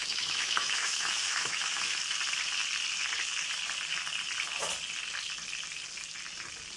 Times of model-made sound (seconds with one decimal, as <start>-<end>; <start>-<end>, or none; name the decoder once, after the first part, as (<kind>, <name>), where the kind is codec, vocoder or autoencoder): 0.0-2.0 (autoencoder, DAC-VAE)

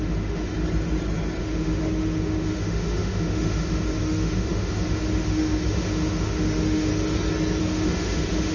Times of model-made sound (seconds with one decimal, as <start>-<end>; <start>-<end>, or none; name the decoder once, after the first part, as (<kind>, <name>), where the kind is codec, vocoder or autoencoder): 0.0-0.5 (autoencoder, DAC-VAE); 1.4-6.9; 7.6-8.5

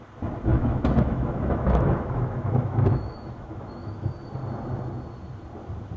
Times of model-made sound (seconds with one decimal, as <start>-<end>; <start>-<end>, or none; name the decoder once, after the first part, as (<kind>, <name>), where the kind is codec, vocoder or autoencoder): 0.5-4.1 (autoencoder, DAC-VAE)

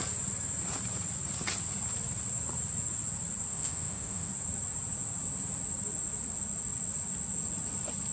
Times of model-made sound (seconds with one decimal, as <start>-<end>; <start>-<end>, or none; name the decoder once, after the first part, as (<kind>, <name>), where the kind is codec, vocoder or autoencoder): 3.5-4.3 (autoencoder, DAC-VAE)